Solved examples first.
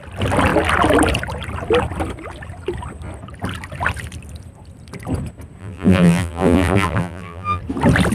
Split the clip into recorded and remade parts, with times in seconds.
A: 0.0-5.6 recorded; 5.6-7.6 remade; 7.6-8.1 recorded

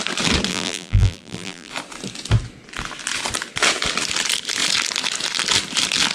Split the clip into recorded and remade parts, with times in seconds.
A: 0.0-0.5 recorded; 0.5-1.7 remade; 1.7-6.1 recorded

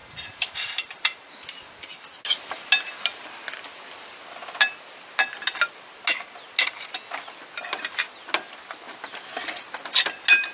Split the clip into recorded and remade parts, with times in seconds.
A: 0.0-1.3 remade; 1.3-10.5 recorded

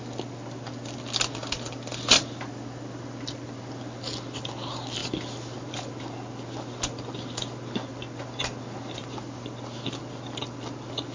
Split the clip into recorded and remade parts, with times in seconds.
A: 0.0-1.4 recorded; 1.4-3.8 remade; 3.8-9.0 recorded; 9.0-10.0 remade; 10.0-11.1 recorded

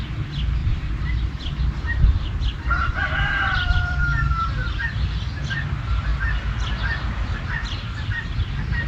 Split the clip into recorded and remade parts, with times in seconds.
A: 0.0-0.6 recorded; 0.6-4.7 remade; 4.7-8.9 recorded